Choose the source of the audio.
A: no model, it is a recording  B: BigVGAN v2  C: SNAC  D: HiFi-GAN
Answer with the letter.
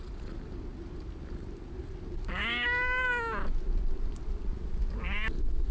A